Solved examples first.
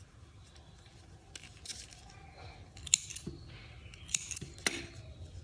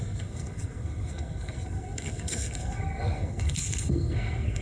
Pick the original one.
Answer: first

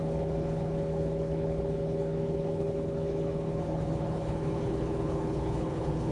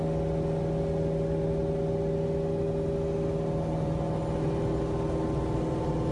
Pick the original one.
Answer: second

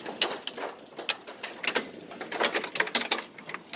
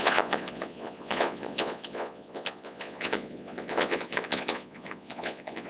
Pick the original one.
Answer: first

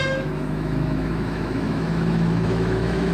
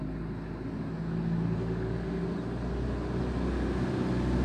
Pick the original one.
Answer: second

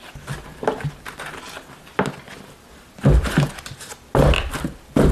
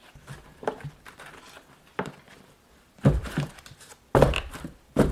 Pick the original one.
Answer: first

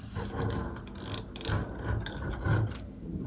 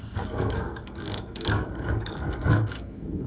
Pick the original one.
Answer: first